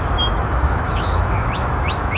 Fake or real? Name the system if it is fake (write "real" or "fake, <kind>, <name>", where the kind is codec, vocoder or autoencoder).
fake, autoencoder, DAC-VAE